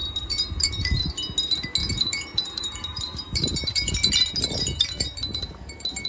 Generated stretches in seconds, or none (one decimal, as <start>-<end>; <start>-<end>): 0.0-1.0; 1.8-3.9